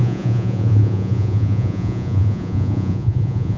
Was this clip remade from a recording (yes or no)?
yes